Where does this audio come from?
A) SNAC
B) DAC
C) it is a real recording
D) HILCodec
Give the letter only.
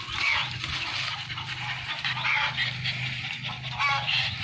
C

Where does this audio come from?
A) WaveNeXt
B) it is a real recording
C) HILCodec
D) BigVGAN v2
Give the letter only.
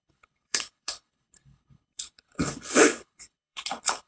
C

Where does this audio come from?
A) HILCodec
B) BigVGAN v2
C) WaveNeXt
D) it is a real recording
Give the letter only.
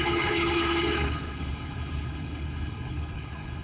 A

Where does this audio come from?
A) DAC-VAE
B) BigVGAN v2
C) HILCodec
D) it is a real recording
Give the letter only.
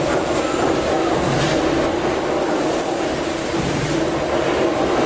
D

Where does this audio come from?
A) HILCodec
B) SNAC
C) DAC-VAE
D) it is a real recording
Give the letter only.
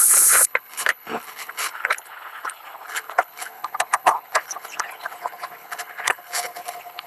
A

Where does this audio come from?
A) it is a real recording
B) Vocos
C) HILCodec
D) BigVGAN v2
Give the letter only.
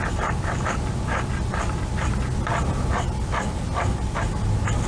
A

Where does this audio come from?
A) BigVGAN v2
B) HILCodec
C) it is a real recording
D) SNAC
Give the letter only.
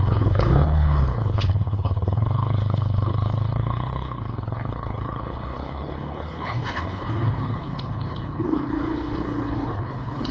B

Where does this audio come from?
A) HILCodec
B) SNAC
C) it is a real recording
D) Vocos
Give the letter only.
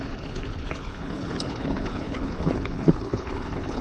A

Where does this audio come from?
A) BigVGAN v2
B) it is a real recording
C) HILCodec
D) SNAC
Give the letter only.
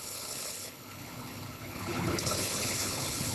C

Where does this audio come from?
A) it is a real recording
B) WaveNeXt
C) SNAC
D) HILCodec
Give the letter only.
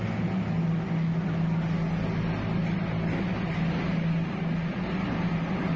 A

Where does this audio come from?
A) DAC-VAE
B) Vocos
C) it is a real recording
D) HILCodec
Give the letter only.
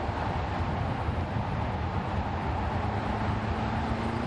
C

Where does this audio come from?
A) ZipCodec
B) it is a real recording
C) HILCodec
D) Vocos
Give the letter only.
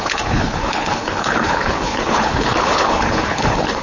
C